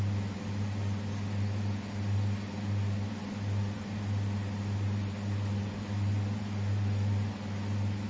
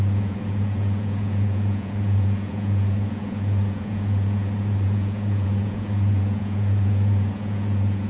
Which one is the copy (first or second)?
second